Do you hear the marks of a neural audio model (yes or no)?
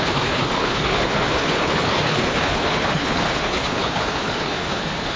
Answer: yes